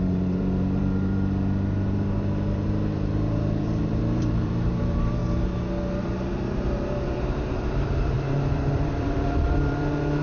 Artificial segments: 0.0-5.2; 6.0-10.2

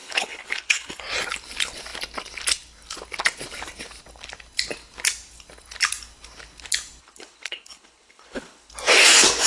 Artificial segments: 0.0-1.0; 7.0-8.7

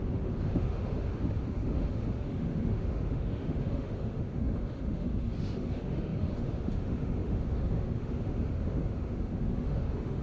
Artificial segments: 0.0-10.2

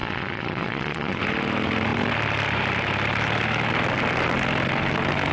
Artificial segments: 0.0-1.2

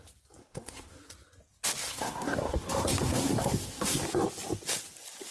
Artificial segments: 0.4-1.1; 1.8-4.0

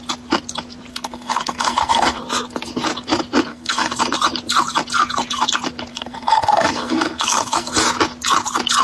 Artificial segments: 0.9-2.2; 3.5-4.0; 5.9-7.7